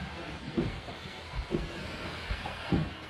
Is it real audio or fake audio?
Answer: fake